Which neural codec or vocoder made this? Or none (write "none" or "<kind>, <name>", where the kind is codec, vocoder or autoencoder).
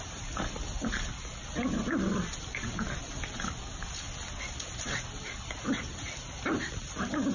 none